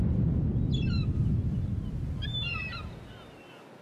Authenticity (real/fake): real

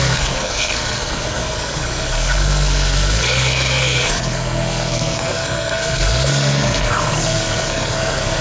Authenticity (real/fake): fake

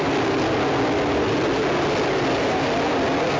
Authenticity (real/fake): real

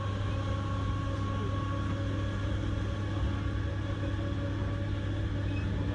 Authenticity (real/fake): real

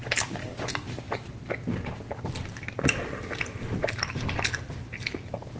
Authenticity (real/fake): real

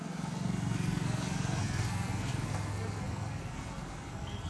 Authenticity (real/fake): fake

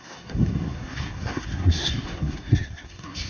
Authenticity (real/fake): fake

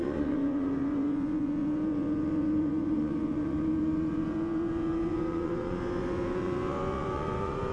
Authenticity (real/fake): fake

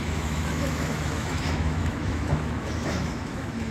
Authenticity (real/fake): fake